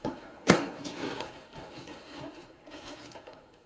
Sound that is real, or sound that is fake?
fake